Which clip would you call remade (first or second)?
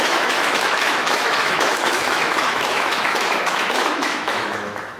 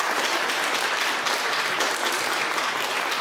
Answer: first